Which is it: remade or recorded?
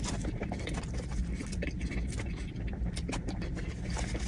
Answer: recorded